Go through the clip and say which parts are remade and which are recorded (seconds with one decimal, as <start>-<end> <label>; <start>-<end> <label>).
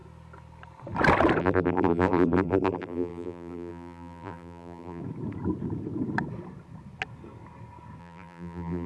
0.0-1.4 recorded; 1.4-5.0 remade; 5.0-8.0 recorded; 8.0-8.9 remade